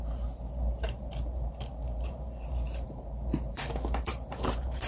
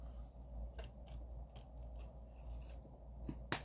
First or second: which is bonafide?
second